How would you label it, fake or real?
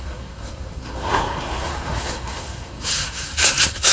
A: fake